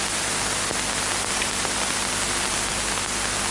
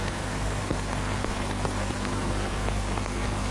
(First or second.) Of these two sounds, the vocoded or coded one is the second